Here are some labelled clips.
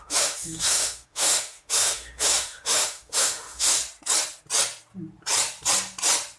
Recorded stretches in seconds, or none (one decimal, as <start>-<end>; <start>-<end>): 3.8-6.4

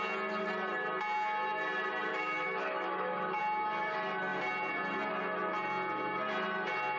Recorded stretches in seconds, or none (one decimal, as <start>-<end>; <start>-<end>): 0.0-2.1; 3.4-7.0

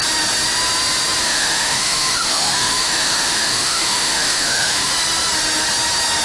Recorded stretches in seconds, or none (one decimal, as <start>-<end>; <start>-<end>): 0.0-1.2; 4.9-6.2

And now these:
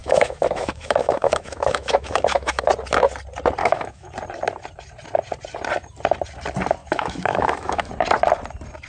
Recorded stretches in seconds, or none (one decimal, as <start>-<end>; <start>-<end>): 2.7-3.6; 4.1-6.8; 7.9-8.9